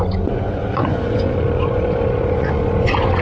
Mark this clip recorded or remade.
remade